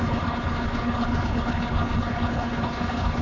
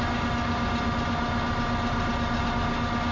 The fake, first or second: first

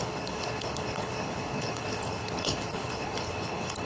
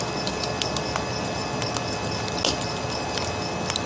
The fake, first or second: first